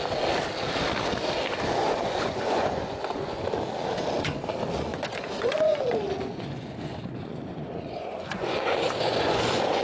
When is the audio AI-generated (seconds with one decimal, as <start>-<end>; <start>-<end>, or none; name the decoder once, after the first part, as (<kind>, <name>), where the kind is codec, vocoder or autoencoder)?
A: 1.8-3.4 (vocoder, Vocos); 4.9-9.8